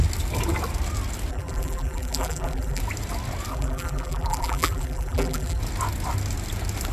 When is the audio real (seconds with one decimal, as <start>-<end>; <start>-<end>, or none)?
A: 0.0-1.3; 2.8-3.5; 5.6-6.9